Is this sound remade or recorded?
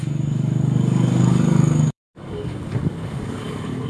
remade